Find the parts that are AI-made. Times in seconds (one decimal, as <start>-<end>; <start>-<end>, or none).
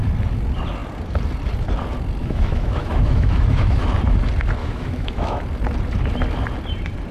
2.2-3.8; 4.6-5.4